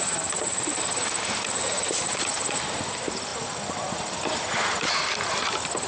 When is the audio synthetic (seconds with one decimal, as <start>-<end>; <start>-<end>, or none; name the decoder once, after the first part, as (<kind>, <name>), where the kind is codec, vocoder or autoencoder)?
0.0-3.3 (vocoder, BigVGAN v2)